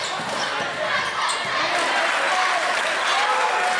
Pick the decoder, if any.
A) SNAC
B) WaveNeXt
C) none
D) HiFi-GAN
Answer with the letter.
C